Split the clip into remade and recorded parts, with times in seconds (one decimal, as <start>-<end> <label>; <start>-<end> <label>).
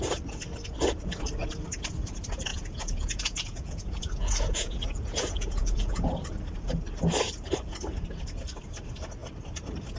0.0-2.5 recorded; 2.5-6.0 remade; 6.0-10.0 recorded